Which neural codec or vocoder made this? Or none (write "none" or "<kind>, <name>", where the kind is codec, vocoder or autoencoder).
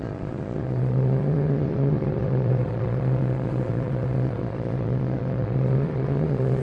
vocoder, Vocos